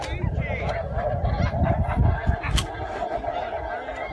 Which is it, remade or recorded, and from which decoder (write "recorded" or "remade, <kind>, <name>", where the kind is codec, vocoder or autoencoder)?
recorded